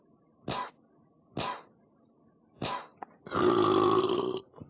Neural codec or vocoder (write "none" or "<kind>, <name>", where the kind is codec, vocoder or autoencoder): none